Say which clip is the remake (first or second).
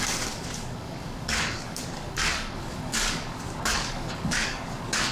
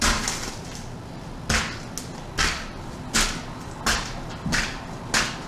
first